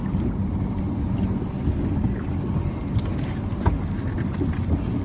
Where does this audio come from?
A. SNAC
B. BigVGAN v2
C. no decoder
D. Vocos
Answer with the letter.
C